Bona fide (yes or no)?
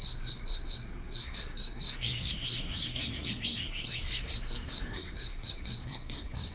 no